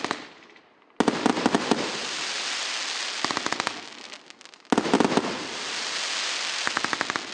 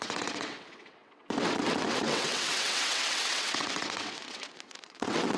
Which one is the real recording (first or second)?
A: first